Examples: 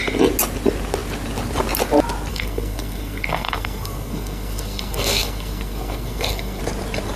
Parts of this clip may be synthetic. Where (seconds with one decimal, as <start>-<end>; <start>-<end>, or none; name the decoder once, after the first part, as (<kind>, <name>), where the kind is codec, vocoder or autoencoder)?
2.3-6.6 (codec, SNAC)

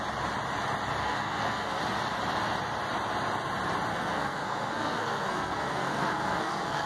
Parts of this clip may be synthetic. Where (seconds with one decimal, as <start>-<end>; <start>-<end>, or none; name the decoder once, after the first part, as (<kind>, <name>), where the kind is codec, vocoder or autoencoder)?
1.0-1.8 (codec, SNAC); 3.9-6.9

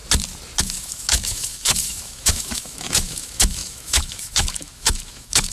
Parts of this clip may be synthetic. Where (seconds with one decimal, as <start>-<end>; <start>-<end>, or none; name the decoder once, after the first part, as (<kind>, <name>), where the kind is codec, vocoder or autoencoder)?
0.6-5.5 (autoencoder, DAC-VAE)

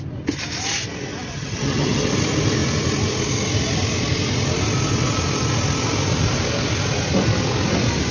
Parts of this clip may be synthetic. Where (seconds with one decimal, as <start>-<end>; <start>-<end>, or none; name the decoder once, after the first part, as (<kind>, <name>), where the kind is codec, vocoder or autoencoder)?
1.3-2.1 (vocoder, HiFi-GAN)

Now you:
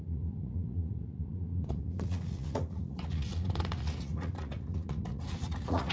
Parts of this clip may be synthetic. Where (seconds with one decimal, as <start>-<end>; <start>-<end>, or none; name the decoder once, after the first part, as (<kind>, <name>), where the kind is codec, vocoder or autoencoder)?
0.0-5.9 (vocoder, Vocos)